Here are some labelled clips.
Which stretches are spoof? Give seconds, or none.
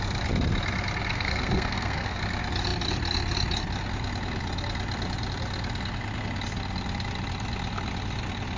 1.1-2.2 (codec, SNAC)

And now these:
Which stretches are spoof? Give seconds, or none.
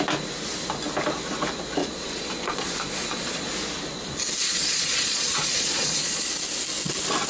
1.8-3.5 (vocoder, Vocos); 4.4-6.3